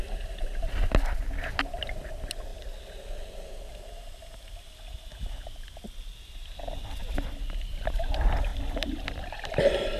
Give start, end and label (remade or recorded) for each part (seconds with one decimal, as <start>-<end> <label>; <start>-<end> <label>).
0.0-10.0 recorded